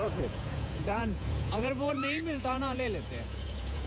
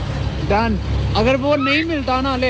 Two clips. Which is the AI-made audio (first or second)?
first